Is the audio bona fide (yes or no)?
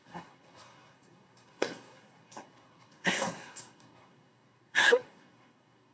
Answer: no